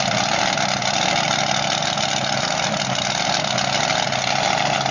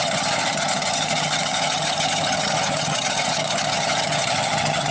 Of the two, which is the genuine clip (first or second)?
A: first